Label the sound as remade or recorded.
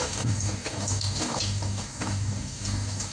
remade